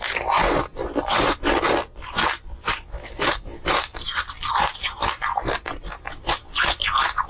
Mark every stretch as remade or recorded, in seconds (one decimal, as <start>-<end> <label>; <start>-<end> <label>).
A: 0.0-0.7 recorded; 0.7-1.2 remade; 1.2-1.8 recorded; 1.8-5.2 remade; 5.2-7.3 recorded